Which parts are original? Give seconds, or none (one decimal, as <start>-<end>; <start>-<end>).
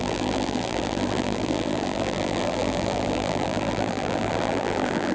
none